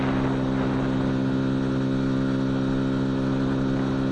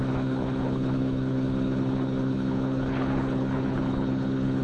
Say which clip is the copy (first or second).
second